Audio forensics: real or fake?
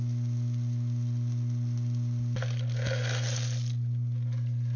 real